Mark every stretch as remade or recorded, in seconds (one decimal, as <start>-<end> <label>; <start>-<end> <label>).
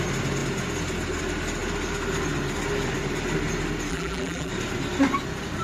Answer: 0.0-3.9 recorded; 3.9-4.5 remade; 4.5-5.6 recorded